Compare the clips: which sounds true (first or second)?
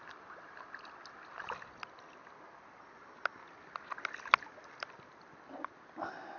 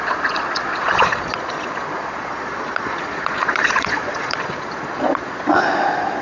first